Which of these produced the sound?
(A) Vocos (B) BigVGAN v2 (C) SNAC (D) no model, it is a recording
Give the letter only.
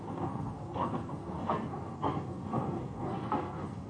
C